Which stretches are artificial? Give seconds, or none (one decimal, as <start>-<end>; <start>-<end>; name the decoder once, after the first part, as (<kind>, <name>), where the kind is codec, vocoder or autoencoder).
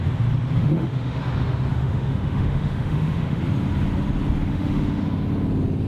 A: 0.6-1.2 (autoencoder, DAC-VAE); 1.7-3.4; 4.5-5.0